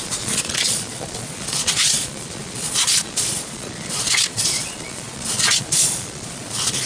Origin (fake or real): fake